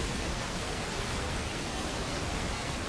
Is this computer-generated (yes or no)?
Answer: yes